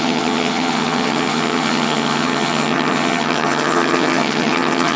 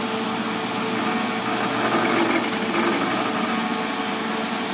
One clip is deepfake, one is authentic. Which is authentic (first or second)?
second